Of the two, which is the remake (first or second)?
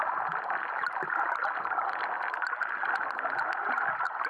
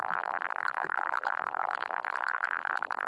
second